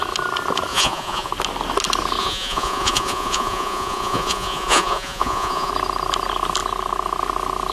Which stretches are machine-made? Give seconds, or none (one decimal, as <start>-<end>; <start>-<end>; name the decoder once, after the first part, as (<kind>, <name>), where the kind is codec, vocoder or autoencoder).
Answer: 0.7-1.3 (vocoder, Vocos); 2.2-5.7

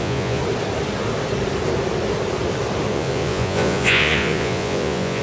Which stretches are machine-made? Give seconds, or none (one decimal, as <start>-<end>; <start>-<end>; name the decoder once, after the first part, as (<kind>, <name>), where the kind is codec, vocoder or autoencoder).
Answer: 0.0-0.4 (vocoder, Vocos); 2.9-5.2